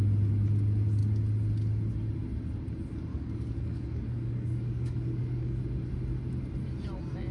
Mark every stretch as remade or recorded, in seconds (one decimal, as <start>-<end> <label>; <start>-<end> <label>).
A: 0.0-3.1 recorded; 3.1-5.6 remade; 5.6-7.3 recorded